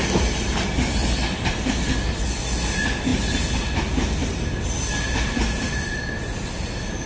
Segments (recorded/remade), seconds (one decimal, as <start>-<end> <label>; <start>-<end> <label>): 0.0-1.0 recorded; 1.0-1.7 remade; 1.7-7.1 recorded